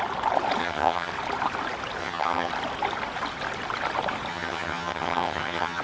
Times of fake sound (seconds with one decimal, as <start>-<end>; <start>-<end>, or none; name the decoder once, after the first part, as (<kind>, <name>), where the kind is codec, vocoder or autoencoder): 0.6-1.1 (vocoder, HiFi-GAN); 2.0-2.5; 4.3-5.8

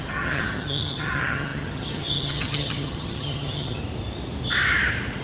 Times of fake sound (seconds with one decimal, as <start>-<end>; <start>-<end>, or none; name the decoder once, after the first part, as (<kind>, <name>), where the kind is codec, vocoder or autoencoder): 0.0-3.8 (vocoder, HiFi-GAN)